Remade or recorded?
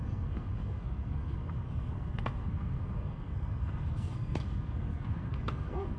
remade